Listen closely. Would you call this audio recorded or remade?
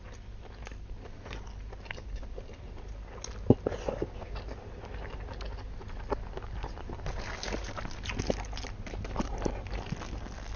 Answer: recorded